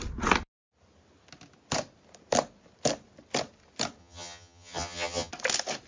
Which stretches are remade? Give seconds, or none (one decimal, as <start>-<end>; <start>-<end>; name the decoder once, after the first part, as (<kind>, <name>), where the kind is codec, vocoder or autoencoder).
4.0-5.3 (vocoder, HiFi-GAN)